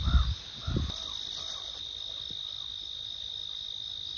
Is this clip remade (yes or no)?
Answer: no